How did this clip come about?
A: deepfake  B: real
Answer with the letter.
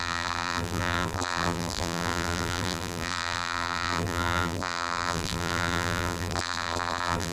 A